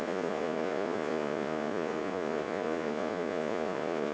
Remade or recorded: remade